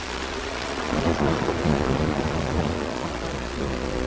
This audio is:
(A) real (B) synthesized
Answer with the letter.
B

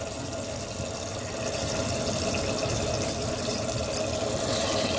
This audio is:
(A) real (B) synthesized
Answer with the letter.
A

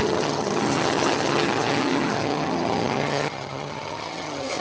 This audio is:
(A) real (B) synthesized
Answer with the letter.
B